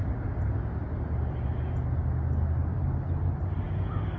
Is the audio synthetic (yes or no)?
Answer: no